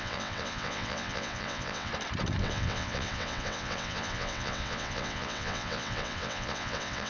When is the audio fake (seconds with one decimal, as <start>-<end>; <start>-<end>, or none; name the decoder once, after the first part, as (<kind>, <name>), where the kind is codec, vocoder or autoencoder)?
0.0-1.9 (vocoder, WaveNeXt); 2.4-7.1